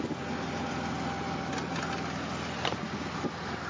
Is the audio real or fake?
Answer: real